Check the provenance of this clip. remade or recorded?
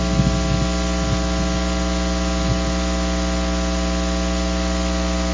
recorded